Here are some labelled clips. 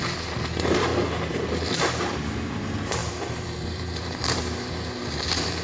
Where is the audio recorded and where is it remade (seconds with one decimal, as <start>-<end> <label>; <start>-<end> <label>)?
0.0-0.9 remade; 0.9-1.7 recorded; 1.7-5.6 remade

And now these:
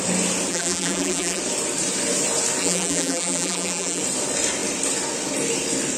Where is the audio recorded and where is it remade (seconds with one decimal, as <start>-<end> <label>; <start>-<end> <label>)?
0.0-0.5 recorded; 0.5-1.4 remade; 1.4-2.6 recorded; 2.6-4.0 remade; 4.0-6.0 recorded

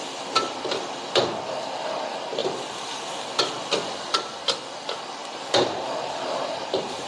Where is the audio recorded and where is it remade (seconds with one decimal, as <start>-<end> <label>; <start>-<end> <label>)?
0.0-5.2 recorded; 5.2-7.1 remade

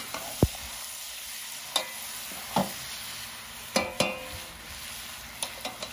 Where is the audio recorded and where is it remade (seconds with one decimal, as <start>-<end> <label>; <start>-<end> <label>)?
0.0-5.9 recorded

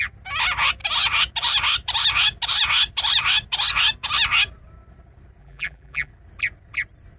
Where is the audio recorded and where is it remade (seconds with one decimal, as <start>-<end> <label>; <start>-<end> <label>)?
0.0-5.4 recorded; 5.4-6.1 remade; 6.1-7.2 recorded